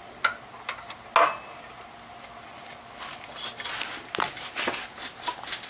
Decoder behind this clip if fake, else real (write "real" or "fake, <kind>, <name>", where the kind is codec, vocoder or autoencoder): real